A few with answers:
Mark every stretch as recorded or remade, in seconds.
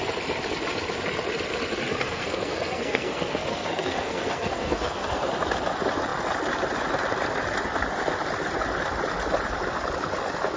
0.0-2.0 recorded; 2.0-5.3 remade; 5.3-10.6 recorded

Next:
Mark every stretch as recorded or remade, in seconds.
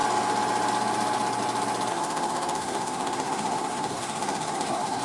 0.0-1.9 recorded; 1.9-5.0 remade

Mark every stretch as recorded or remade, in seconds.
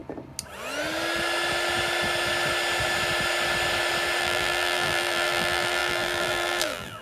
0.0-4.2 recorded; 4.2-7.0 remade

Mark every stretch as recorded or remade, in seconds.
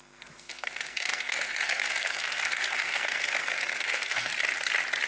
0.0-4.3 remade; 4.3-5.1 recorded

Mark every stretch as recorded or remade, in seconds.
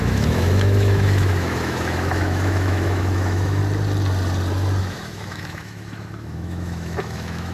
0.0-3.6 remade; 3.6-4.8 recorded; 4.8-7.5 remade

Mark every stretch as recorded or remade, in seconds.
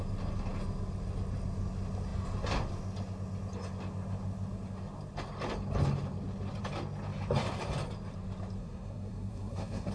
0.0-8.6 recorded; 8.6-9.9 remade